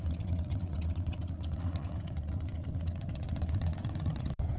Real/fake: fake